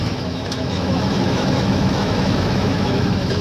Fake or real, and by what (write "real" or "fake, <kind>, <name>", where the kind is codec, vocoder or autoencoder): fake, autoencoder, DAC-VAE